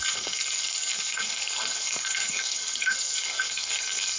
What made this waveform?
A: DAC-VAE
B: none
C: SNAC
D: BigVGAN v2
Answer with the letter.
C